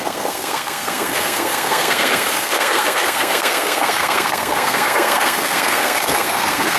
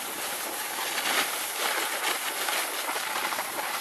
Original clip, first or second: second